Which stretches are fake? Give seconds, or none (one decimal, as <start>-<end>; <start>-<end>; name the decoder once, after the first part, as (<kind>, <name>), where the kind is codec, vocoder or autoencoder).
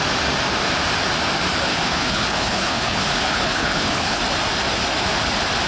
1.7-4.2 (codec, HILCodec)